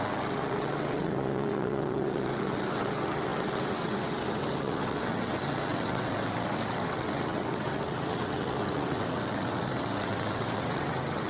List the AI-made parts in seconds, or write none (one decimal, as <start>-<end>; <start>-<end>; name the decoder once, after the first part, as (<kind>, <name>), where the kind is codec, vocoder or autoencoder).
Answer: 0.0-11.3 (vocoder, WaveNeXt)